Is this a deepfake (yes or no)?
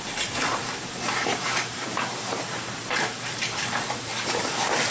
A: yes